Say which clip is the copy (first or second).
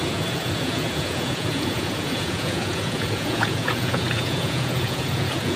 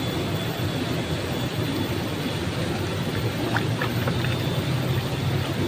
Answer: first